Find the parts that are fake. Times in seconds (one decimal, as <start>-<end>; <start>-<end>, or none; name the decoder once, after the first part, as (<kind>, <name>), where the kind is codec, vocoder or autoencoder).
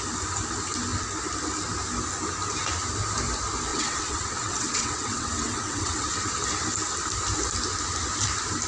3.7-6.3 (vocoder, WaveNeXt)